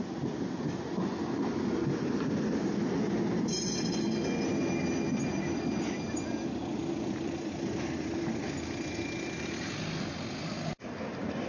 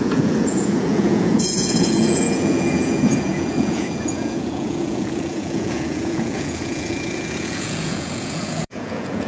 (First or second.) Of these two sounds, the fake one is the second